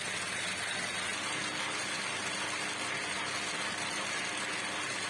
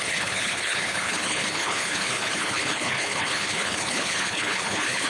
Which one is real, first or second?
first